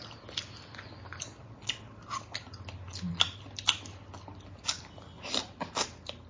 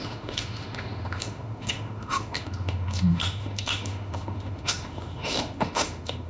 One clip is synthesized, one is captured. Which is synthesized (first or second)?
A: second